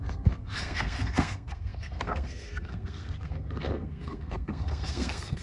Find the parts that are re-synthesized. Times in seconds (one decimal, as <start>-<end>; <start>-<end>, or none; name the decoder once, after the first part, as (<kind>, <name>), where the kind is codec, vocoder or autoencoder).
0.0-5.4 (codec, SNAC)

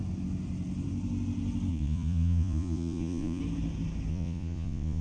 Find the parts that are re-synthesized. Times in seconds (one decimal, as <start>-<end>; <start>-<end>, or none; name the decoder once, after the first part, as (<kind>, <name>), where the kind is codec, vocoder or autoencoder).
1.7-3.4 (vocoder, Vocos); 4.1-5.0

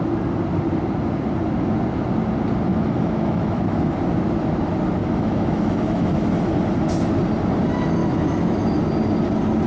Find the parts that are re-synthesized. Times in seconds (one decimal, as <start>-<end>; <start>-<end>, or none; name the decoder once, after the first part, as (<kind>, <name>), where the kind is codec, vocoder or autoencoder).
2.7-3.9 (autoencoder, DAC-VAE); 5.0-6.3; 8.0-8.8

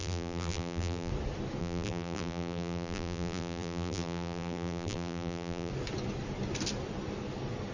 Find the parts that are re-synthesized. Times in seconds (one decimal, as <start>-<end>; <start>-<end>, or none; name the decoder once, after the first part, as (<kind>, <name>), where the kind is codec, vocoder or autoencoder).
0.0-1.1 (vocoder, BigVGAN v2); 1.6-5.7

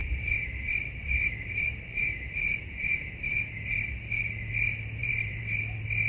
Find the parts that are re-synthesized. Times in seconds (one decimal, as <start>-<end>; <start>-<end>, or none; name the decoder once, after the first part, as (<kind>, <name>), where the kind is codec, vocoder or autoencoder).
0.0-3.7 (vocoder, BigVGAN v2); 5.0-5.6

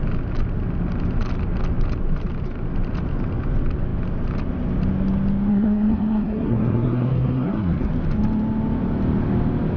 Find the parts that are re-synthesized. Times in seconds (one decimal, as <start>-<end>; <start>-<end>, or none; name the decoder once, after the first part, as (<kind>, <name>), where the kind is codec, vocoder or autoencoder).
5.5-7.9 (codec, SNAC)